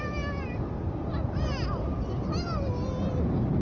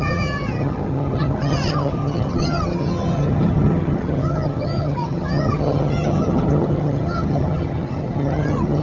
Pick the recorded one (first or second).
first